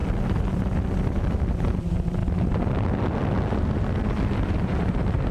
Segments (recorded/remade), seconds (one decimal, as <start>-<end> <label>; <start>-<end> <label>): 0.0-1.3 recorded; 1.3-2.2 remade; 2.2-4.5 recorded; 4.5-5.3 remade